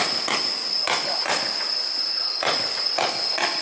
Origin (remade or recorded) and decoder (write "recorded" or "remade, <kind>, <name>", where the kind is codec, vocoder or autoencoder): recorded